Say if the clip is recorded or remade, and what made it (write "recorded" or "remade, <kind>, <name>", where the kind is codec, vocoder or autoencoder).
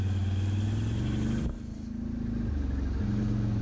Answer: recorded